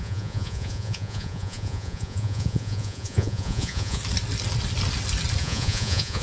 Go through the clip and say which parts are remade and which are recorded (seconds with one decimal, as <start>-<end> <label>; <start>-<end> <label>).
0.0-4.0 remade; 4.0-5.4 recorded; 5.4-6.2 remade